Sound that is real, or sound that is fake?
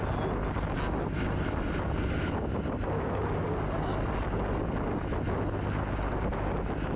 real